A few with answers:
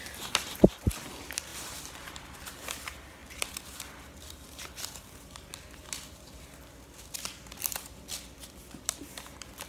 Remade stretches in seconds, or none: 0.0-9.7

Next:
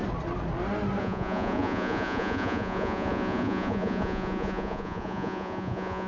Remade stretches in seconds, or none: 1.0-6.1

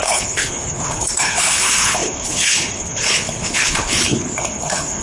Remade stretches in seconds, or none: 0.0-5.0

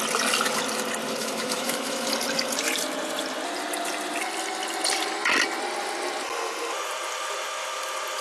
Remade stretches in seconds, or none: 1.2-2.1

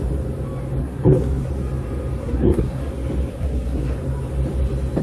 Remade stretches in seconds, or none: 0.8-1.5; 2.2-2.9; 3.3-3.9

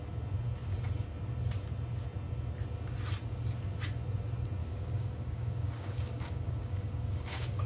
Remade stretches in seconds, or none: 4.6-7.7